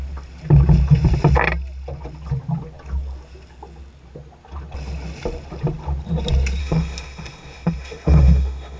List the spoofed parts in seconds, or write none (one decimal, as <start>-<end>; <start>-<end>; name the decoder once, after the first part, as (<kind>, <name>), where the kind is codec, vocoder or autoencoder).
6.6-8.8 (autoencoder, DAC-VAE)